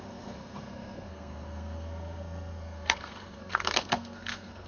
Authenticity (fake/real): fake